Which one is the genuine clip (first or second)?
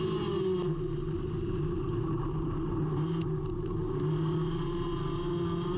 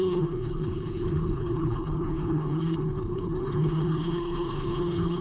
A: first